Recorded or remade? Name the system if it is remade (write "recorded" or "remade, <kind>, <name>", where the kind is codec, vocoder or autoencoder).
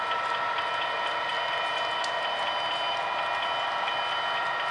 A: recorded